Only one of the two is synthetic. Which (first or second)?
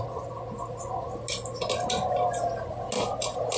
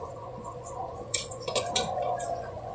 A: second